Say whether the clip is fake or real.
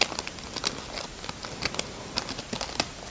real